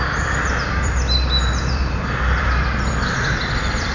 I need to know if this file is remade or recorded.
remade